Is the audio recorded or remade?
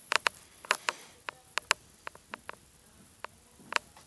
recorded